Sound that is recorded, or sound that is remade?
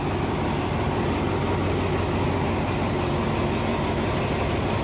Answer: recorded